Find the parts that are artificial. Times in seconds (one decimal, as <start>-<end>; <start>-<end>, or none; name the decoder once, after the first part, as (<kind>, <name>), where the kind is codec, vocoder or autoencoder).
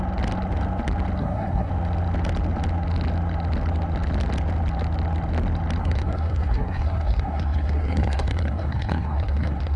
1.2-1.7 (codec, SNAC); 5.8-9.8